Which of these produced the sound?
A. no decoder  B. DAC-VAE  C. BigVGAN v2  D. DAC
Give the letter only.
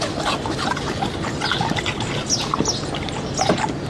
A